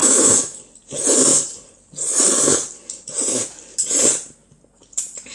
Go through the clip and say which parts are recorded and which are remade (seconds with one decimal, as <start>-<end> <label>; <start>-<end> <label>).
0.0-0.6 remade; 0.6-5.3 recorded

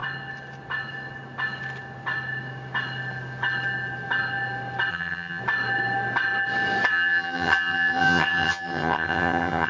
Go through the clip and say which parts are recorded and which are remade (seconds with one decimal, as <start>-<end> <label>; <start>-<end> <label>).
0.0-4.9 recorded; 4.9-5.4 remade; 5.4-6.9 recorded; 6.9-9.7 remade

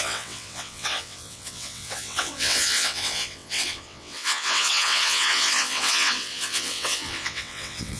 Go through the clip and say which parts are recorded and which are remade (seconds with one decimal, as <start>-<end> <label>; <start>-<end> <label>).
0.0-8.0 remade